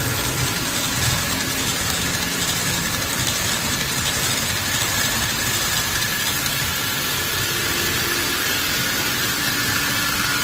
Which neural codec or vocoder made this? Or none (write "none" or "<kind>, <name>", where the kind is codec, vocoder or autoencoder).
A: none